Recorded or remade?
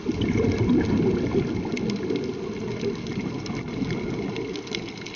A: recorded